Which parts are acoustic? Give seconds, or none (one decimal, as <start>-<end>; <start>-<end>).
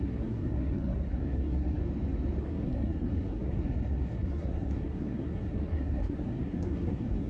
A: 1.8-2.4